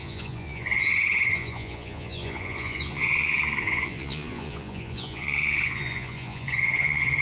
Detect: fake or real fake